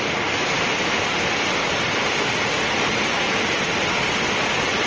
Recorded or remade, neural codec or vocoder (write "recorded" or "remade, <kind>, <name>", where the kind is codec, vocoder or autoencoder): recorded